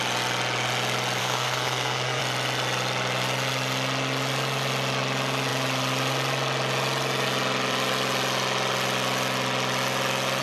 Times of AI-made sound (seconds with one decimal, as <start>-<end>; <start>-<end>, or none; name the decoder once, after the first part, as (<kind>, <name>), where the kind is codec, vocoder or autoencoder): 1.2-2.2 (codec, SNAC)